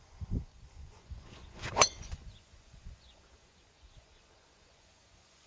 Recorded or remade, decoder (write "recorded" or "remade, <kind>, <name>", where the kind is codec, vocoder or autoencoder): remade, vocoder, Vocos